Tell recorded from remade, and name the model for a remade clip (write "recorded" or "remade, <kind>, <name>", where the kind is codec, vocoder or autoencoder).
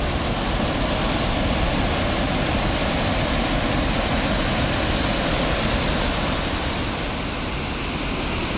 recorded